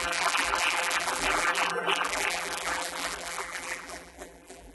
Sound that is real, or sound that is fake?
fake